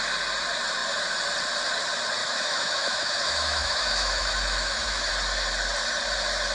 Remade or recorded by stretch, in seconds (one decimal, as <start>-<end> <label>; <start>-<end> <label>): 0.0-2.2 recorded; 2.2-5.1 remade; 5.1-6.5 recorded